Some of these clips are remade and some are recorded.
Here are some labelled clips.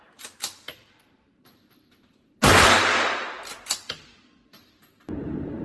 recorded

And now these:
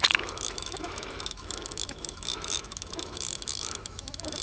remade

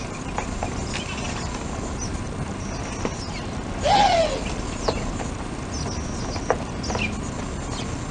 recorded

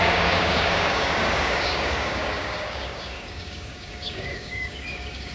remade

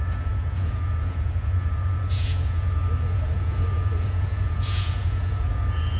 remade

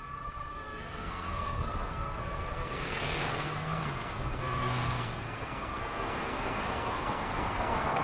remade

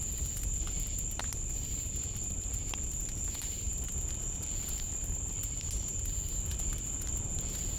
recorded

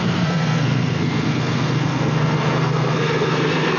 remade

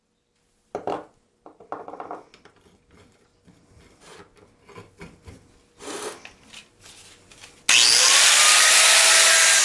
recorded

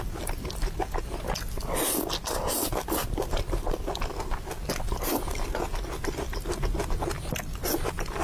recorded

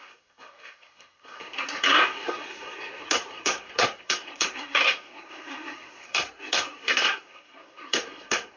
remade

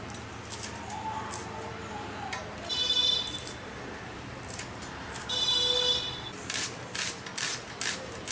recorded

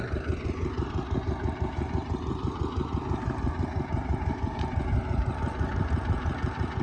recorded